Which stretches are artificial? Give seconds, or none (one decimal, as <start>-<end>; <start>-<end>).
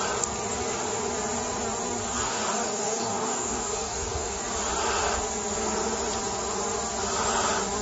2.1-4.4